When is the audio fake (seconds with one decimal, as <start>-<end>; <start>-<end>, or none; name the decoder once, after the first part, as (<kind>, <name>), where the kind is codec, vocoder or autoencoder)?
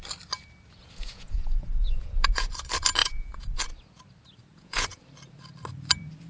0.8-2.5 (vocoder, Vocos); 3.0-3.6; 4.5-5.0